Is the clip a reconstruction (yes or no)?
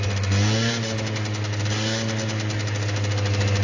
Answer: no